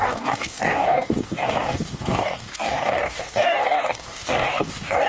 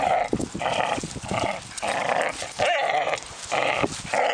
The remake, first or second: first